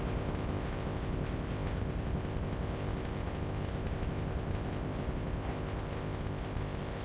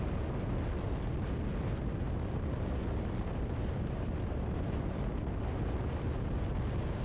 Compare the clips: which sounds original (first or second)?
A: second